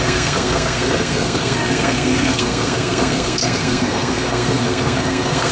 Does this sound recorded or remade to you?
remade